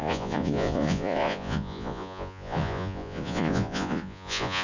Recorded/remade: remade